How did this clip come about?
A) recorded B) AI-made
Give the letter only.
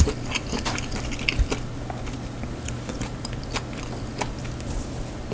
A